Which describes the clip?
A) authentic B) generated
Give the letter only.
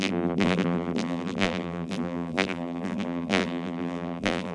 B